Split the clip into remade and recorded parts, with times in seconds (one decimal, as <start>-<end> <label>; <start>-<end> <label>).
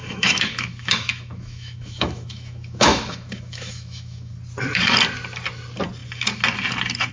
0.0-4.3 remade; 4.3-7.1 recorded